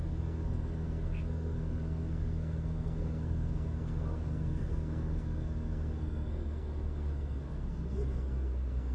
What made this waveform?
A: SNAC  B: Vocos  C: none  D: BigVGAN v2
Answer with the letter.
A